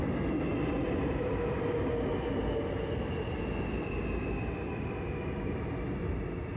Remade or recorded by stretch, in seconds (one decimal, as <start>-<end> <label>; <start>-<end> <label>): 0.0-6.6 recorded